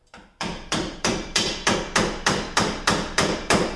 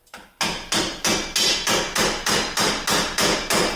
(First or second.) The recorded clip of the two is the second